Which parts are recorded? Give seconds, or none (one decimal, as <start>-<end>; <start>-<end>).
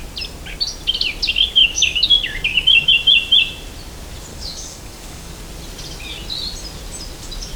0.0-1.6; 2.9-4.3; 5.3-7.6